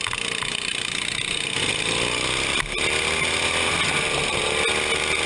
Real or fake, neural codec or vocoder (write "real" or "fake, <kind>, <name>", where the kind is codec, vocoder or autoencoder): real